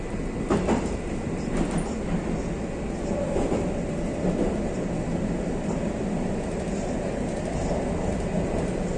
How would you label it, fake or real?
real